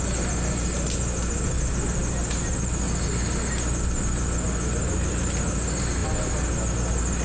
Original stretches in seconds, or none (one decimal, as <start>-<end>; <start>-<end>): 0.0-7.2